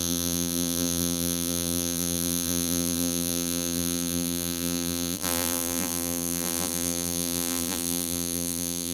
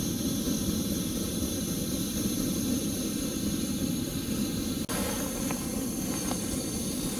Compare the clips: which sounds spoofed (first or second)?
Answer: first